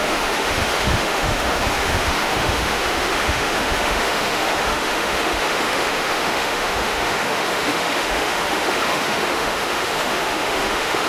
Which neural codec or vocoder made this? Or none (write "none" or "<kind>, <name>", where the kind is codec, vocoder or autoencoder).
autoencoder, DAC-VAE